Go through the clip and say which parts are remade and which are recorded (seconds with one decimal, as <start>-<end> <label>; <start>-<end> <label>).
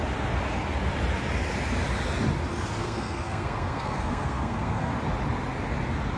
0.0-2.8 recorded; 2.8-4.9 remade; 4.9-6.2 recorded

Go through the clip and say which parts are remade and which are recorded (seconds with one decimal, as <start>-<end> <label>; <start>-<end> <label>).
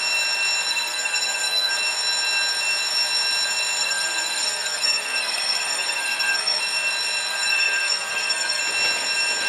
0.0-0.7 recorded; 0.7-1.7 remade; 1.7-3.8 recorded; 3.8-6.6 remade; 6.6-7.3 recorded; 7.3-8.6 remade; 8.6-9.5 recorded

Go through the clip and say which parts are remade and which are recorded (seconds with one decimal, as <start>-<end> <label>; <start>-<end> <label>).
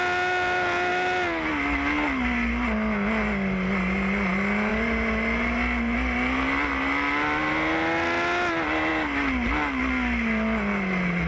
0.0-11.3 recorded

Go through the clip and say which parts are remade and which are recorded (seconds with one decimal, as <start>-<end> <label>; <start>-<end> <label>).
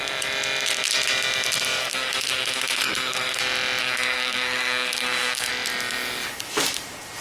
0.0-1.8 recorded; 1.8-3.4 remade; 3.4-3.8 recorded; 3.8-5.5 remade; 5.5-7.2 recorded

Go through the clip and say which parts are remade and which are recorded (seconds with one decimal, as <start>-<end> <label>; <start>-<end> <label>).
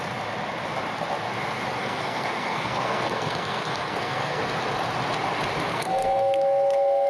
0.0-1.8 recorded; 1.8-4.4 remade; 4.4-5.7 recorded; 5.7-7.1 remade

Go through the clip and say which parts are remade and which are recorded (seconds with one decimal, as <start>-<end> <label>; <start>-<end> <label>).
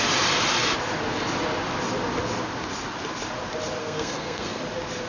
0.0-3.8 recorded; 3.8-4.6 remade; 4.6-5.1 recorded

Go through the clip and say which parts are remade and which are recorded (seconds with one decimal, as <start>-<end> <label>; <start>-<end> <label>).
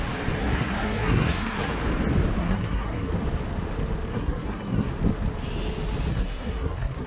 0.0-0.4 recorded; 0.4-1.7 remade; 1.7-2.4 recorded; 2.4-3.1 remade; 3.1-4.1 recorded; 4.1-4.9 remade; 4.9-6.1 recorded; 6.1-7.1 remade